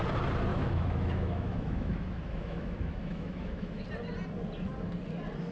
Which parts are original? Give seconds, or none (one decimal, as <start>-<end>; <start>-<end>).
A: 0.0-0.5; 3.8-5.5